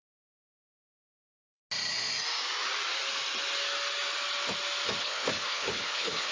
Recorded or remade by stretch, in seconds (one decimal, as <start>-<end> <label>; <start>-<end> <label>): 0.0-1.6 remade; 1.6-5.0 recorded; 5.0-6.3 remade